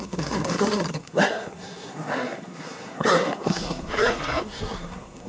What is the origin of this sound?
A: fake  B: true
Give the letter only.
A